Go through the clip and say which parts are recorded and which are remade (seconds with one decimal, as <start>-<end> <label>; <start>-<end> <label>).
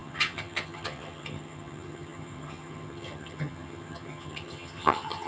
0.0-5.3 remade